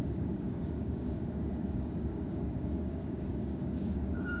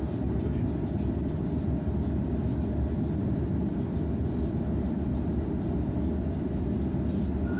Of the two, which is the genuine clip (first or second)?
second